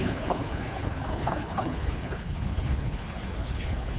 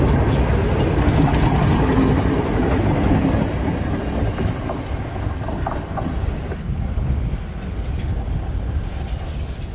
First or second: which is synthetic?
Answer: first